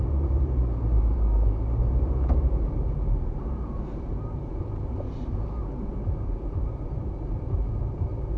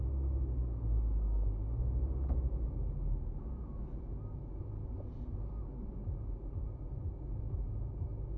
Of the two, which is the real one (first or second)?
second